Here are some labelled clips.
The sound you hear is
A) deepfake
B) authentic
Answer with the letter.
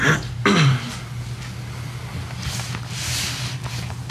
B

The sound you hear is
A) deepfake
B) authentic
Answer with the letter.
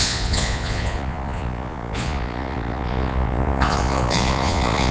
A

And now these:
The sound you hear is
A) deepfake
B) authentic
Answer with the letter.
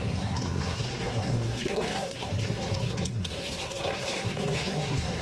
A